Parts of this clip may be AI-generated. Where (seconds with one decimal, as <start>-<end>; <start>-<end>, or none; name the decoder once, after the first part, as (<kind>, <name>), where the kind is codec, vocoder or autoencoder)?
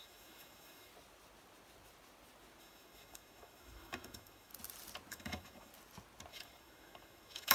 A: 0.0-0.9 (autoencoder, DAC-VAE); 2.6-4.5; 5.1-5.7; 6.3-7.5